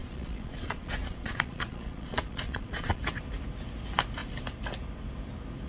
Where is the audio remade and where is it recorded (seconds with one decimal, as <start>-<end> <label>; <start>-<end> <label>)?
0.0-3.0 remade; 3.0-5.7 recorded